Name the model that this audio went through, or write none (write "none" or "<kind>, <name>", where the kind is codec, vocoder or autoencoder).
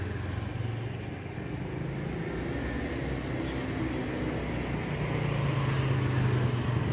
none